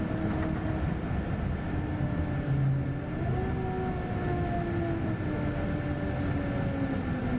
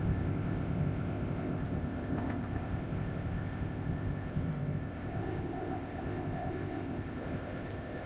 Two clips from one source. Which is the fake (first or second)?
second